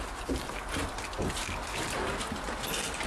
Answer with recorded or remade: recorded